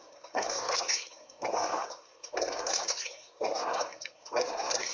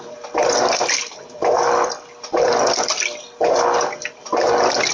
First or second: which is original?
second